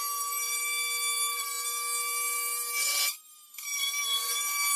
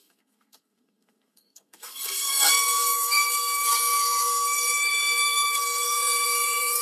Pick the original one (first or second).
first